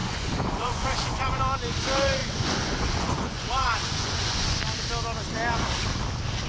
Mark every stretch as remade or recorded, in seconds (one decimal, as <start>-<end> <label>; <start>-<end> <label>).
0.0-1.4 remade; 1.4-2.2 recorded; 2.2-4.6 remade; 4.6-6.5 recorded